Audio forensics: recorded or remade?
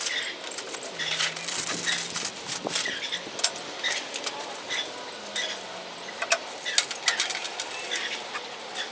recorded